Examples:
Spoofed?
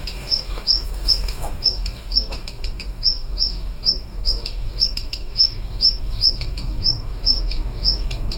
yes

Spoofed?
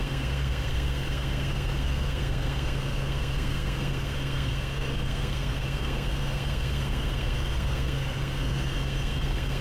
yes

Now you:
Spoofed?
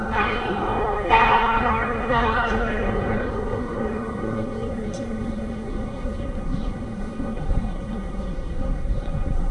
yes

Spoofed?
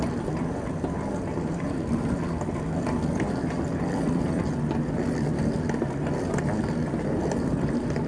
no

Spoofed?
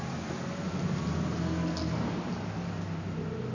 no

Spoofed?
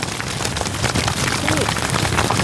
no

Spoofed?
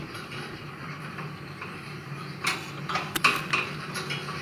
no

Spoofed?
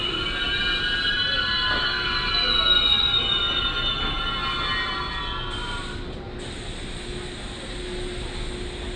no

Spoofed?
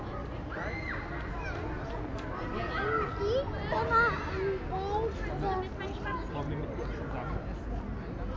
no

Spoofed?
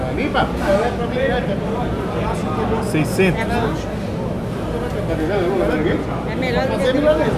no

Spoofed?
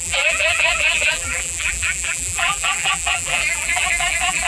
yes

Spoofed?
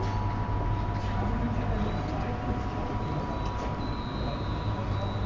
no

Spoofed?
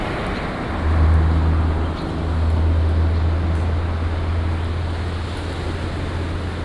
no